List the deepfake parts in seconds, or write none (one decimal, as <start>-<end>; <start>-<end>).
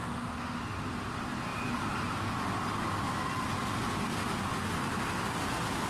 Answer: 0.0-0.6